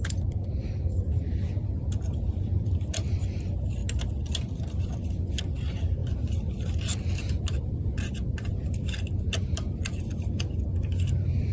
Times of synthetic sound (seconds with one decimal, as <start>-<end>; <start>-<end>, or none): 0.0-3.8; 5.4-6.0; 7.3-11.5